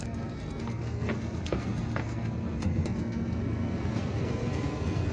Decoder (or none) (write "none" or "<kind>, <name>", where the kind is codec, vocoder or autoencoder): codec, SNAC